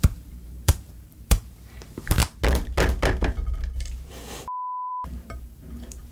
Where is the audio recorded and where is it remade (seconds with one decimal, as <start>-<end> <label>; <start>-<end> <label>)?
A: 0.0-2.2 remade; 2.2-4.9 recorded; 4.9-6.1 remade